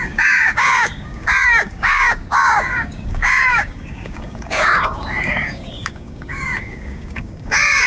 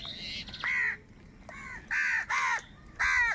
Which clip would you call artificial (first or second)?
first